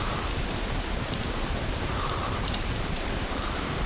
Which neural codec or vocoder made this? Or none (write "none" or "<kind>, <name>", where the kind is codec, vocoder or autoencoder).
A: vocoder, BigVGAN v2